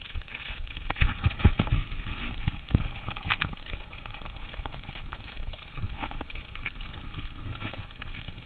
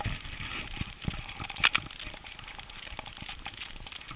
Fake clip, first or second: first